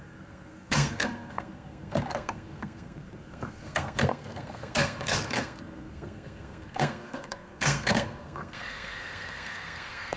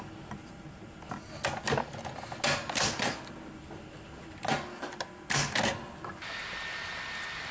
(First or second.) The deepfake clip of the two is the first